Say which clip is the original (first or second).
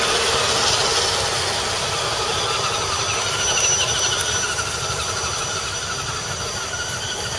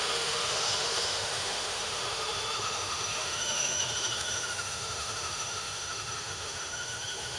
first